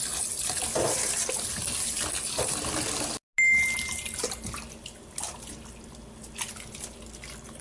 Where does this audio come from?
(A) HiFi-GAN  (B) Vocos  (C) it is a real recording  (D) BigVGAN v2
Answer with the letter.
C